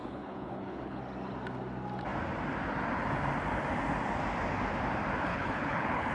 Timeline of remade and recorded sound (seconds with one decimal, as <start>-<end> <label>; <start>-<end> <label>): 0.0-1.0 remade; 1.0-5.3 recorded; 5.3-6.1 remade